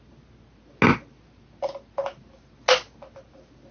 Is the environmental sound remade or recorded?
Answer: recorded